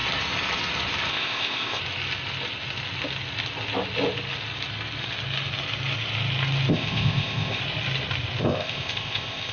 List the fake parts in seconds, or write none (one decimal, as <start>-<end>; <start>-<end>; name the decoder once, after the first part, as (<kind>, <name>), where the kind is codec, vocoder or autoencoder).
1.1-1.8 (codec, ZipCodec); 6.7-7.6; 8.4-9.5